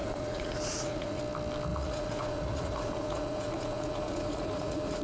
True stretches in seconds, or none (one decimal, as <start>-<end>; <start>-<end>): 1.2-1.7